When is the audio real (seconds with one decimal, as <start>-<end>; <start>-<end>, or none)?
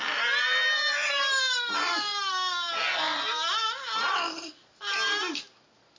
0.0-6.0